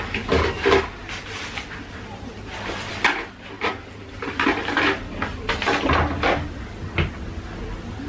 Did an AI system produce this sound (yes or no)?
no